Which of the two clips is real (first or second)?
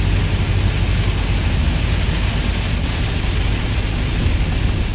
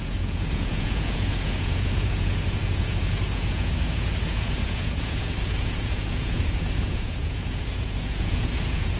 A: first